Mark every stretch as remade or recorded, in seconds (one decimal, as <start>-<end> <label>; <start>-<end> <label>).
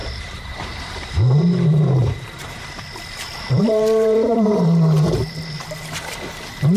0.0-2.6 remade; 2.6-3.3 recorded; 3.3-5.6 remade; 5.6-6.8 recorded